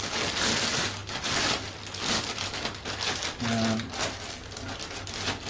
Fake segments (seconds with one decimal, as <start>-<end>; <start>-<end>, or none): none